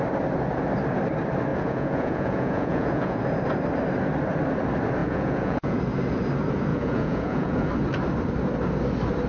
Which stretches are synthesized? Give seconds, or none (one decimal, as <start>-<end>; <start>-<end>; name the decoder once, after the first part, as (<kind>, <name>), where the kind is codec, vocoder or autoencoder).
1.5-3.2 (vocoder, Vocos); 5.0-5.8; 6.7-7.7